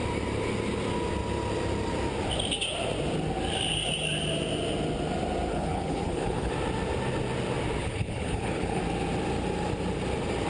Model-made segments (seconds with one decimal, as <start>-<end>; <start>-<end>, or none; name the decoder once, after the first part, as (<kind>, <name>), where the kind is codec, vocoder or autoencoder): 5.5-6.5 (codec, HILCodec); 7.8-8.8